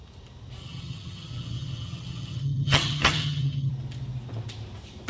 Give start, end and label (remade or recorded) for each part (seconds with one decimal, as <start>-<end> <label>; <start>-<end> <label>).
0.0-0.6 recorded; 0.6-3.7 remade; 3.7-5.1 recorded